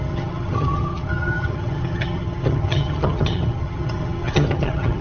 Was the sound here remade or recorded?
remade